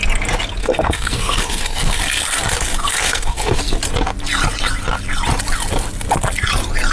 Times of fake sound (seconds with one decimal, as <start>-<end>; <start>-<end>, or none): 0.6-2.0; 2.9-3.6